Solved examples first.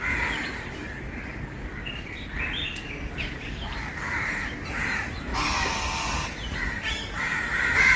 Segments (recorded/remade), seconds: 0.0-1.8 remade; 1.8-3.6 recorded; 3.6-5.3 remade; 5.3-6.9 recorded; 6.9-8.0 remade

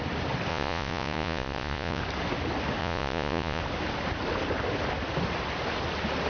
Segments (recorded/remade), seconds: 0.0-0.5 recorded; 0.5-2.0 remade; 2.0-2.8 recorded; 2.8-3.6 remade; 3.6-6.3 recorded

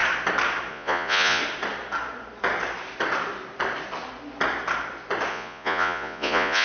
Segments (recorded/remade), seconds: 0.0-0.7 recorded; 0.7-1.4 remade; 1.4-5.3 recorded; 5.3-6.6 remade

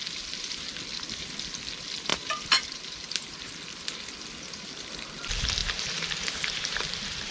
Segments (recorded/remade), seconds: 0.0-2.1 recorded; 2.1-3.5 remade; 3.5-5.6 recorded; 5.6-7.3 remade

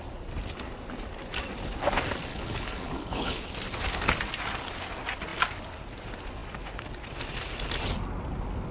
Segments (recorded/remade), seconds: 0.0-2.3 recorded; 2.3-3.4 remade; 3.4-8.7 recorded

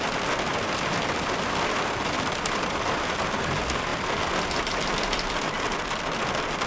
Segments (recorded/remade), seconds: 0.0-0.5 recorded; 0.5-3.0 remade; 3.0-6.7 recorded